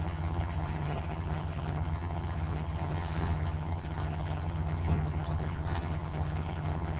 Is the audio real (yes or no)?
no